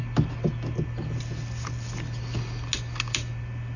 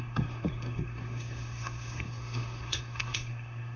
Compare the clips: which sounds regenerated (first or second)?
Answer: second